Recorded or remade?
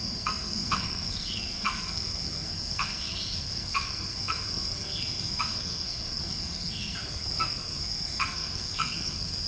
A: remade